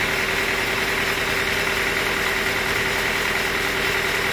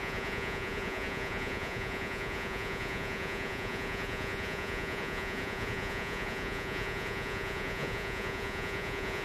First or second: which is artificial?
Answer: second